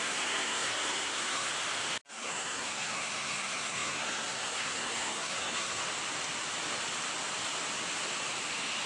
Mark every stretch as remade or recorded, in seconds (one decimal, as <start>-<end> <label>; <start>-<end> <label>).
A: 0.0-1.5 remade; 1.5-2.1 recorded; 2.1-5.8 remade; 5.8-8.9 recorded